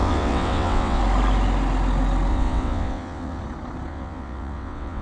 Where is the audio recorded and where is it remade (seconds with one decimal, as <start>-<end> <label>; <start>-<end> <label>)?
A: 0.0-1.0 remade; 1.0-2.3 recorded; 2.3-3.4 remade; 3.4-3.9 recorded; 3.9-5.0 remade